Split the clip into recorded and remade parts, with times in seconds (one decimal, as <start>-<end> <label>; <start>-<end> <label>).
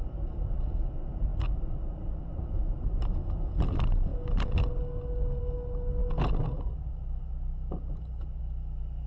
0.0-9.1 recorded